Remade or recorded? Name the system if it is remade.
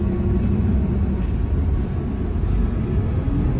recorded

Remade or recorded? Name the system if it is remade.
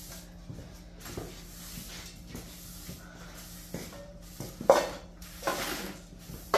recorded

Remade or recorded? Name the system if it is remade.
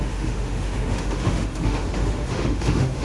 remade, autoencoder, DAC-VAE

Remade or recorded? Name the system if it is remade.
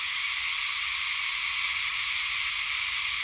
recorded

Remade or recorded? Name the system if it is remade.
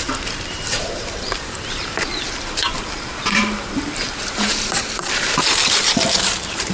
remade, vocoder, BigVGAN v2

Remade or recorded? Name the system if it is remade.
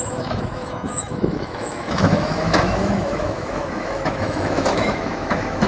remade, autoencoder, DAC-VAE